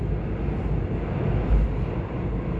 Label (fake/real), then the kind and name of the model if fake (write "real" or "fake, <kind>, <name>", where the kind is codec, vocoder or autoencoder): real